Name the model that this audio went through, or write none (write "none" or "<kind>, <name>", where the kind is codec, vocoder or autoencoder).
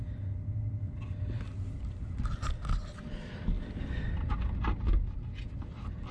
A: none